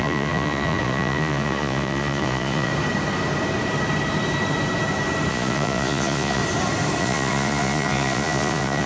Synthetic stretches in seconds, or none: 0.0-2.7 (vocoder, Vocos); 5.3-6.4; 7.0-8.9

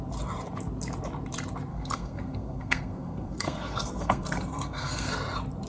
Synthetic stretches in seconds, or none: 1.7-5.1 (codec, SNAC)

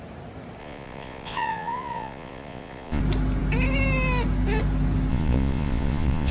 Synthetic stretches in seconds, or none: 0.6-3.0 (vocoder, Vocos); 5.1-6.3

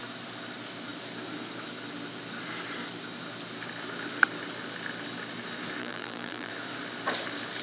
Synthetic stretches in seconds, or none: 5.8-6.5 (vocoder, BigVGAN v2)